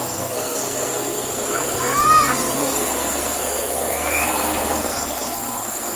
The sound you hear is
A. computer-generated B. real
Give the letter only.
A